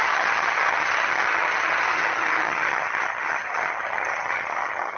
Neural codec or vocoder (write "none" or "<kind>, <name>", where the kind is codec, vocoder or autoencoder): vocoder, HiFi-GAN